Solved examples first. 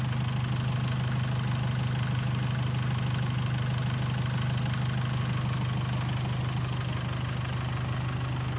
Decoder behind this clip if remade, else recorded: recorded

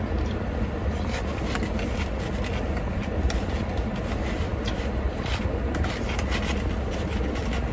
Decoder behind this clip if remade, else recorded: recorded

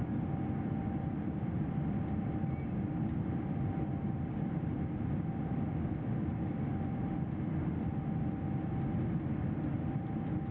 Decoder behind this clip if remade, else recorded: recorded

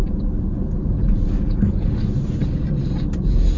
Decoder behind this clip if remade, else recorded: remade, vocoder, BigVGAN v2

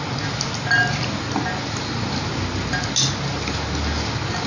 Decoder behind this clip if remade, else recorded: recorded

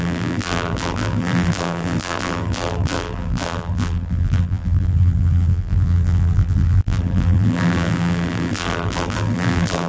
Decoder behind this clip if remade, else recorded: remade, vocoder, BigVGAN v2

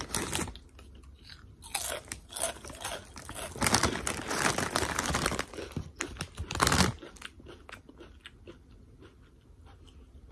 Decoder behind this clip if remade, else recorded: recorded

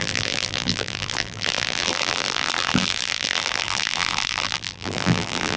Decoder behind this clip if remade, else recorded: remade, vocoder, BigVGAN v2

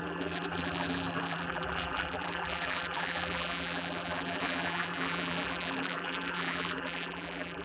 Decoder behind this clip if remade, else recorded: remade, vocoder, BigVGAN v2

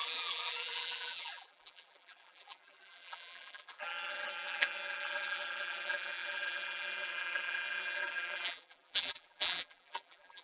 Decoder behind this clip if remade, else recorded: remade, vocoder, BigVGAN v2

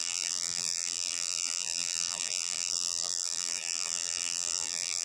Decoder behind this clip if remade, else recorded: remade, vocoder, BigVGAN v2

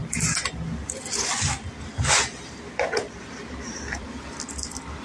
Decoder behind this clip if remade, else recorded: remade, vocoder, BigVGAN v2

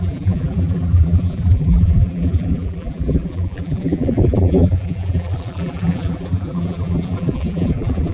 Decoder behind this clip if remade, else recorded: remade, vocoder, BigVGAN v2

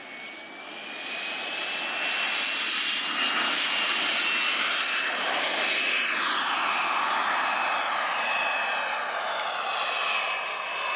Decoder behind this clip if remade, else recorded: recorded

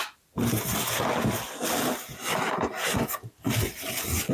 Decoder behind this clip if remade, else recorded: recorded